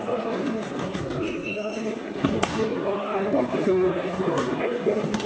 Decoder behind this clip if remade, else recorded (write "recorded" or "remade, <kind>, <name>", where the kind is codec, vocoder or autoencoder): remade, codec, SNAC